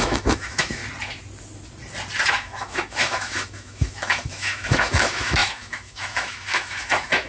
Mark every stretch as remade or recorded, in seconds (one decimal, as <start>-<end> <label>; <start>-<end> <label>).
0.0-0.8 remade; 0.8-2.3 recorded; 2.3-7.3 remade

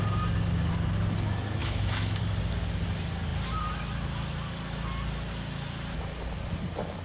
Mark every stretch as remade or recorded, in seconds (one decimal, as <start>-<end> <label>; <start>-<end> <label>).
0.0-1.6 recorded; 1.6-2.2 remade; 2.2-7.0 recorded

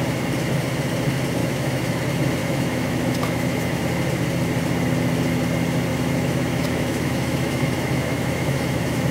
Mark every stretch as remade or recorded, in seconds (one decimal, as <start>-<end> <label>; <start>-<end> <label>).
0.0-1.4 recorded; 1.4-2.0 remade; 2.0-2.4 recorded; 2.4-3.8 remade; 3.8-5.9 recorded; 5.9-9.1 remade

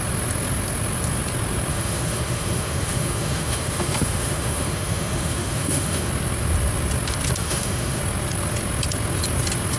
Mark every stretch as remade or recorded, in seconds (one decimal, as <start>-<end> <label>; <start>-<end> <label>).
0.0-1.7 recorded; 1.7-6.1 remade; 6.1-7.4 recorded; 7.4-8.0 remade; 8.0-9.8 recorded

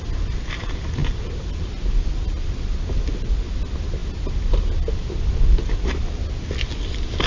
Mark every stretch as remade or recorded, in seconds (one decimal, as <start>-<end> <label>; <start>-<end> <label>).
0.0-7.3 recorded

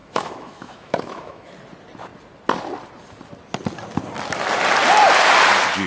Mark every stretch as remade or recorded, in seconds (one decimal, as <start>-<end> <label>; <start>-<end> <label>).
0.0-1.5 remade; 1.5-5.9 recorded